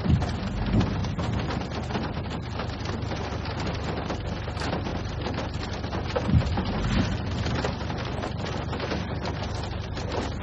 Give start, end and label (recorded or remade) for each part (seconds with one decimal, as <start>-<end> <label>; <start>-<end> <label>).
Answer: 0.0-10.4 recorded